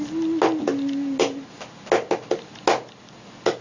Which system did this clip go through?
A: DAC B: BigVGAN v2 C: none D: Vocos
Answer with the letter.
C